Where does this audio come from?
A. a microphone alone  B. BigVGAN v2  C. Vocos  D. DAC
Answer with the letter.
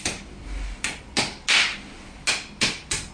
A